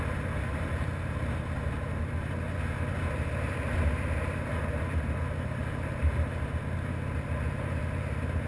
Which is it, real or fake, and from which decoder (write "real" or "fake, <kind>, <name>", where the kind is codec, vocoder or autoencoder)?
real